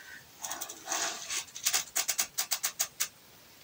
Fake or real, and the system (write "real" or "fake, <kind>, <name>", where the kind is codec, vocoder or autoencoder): real